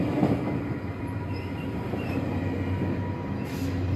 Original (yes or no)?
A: yes